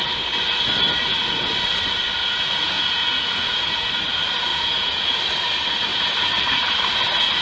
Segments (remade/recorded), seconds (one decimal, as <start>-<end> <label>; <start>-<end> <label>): 0.0-2.2 recorded; 2.2-3.9 remade; 3.9-4.5 recorded; 4.5-5.2 remade; 5.2-5.9 recorded; 5.9-6.4 remade; 6.4-7.4 recorded